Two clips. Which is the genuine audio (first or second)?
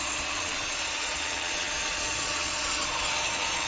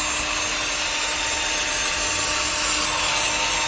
second